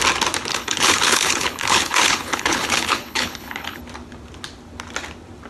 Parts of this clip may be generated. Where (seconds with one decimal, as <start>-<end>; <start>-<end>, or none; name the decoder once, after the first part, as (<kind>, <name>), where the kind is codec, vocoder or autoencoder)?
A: 0.5-3.8 (codec, HILCodec)